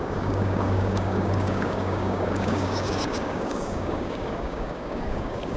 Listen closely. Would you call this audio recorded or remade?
remade